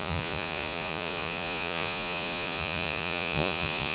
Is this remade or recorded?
remade